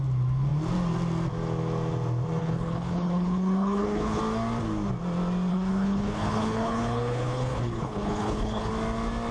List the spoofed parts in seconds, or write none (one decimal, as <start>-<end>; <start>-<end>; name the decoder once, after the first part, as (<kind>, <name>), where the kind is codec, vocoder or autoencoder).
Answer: 2.4-4.2 (codec, HILCodec); 5.5-8.7